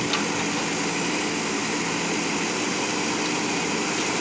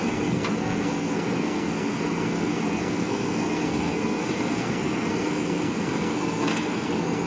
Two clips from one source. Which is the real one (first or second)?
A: first